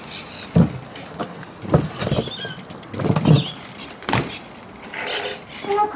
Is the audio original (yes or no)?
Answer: yes